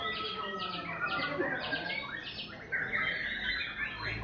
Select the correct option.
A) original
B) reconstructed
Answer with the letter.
A